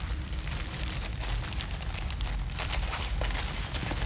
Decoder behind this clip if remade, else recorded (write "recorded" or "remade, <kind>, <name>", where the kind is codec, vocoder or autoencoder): remade, vocoder, BigVGAN v2